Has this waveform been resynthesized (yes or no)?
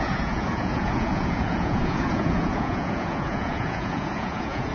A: yes